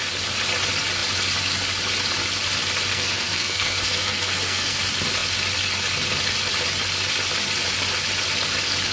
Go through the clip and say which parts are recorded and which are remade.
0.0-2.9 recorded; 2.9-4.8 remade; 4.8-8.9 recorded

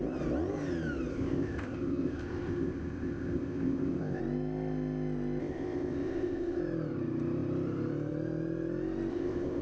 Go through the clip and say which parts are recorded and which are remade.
0.0-1.1 recorded; 1.1-4.2 remade; 4.2-5.4 recorded; 5.4-6.6 remade; 6.6-9.1 recorded; 9.1-9.6 remade

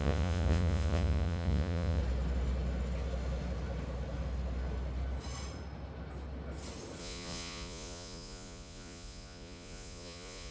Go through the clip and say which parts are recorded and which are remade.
0.0-2.0 remade; 2.0-7.0 recorded; 7.0-10.5 remade